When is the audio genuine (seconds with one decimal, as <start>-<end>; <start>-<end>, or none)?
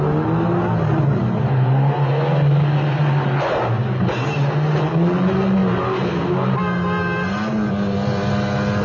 0.0-8.8